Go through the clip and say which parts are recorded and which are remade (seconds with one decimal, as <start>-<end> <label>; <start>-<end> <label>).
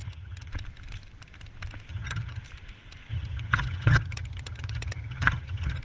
0.0-0.5 remade; 0.5-1.9 recorded; 1.9-2.4 remade; 2.4-3.1 recorded; 3.1-5.8 remade